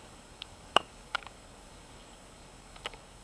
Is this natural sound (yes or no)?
no